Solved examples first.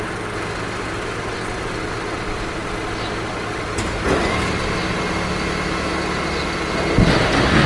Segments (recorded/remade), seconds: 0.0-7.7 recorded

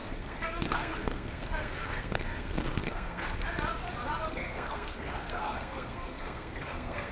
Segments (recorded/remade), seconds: 0.0-3.2 remade; 3.2-4.3 recorded; 4.3-7.1 remade